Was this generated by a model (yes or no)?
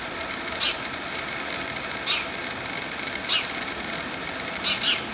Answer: no